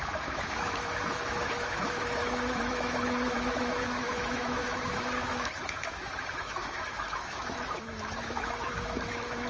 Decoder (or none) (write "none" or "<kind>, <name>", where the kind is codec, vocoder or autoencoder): autoencoder, DAC-VAE